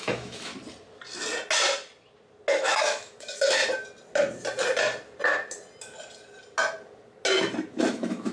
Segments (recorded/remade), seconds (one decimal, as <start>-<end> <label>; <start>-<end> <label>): 0.0-0.5 remade; 0.5-2.5 recorded; 2.5-3.6 remade; 3.6-7.7 recorded; 7.7-8.3 remade

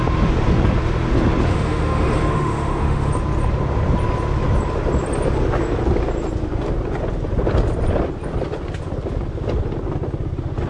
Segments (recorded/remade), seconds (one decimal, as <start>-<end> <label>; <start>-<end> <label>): 0.0-1.5 recorded; 1.5-3.1 remade; 3.1-10.7 recorded

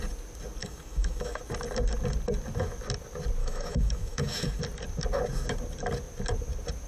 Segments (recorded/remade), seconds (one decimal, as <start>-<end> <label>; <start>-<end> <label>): 0.0-0.6 recorded; 0.6-1.4 remade; 1.4-3.4 recorded; 3.4-4.6 remade; 4.6-6.9 recorded

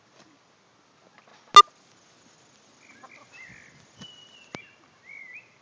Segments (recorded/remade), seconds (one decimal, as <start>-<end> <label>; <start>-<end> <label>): 0.0-5.6 recorded

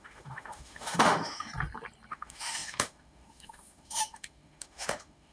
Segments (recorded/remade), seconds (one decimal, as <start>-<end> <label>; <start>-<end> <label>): 0.0-1.5 remade; 1.5-2.1 recorded; 2.1-5.3 remade